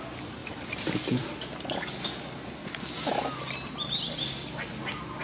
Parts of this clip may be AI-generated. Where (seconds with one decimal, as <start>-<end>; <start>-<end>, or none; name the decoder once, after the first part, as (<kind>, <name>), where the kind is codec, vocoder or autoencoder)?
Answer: none